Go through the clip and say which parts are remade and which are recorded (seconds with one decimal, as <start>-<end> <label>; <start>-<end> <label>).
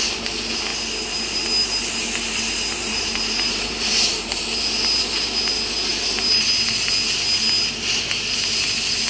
0.0-2.7 recorded; 2.7-4.4 remade; 4.4-9.1 recorded